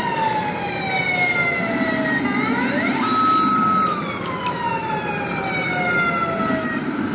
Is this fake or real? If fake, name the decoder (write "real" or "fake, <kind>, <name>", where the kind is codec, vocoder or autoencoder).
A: real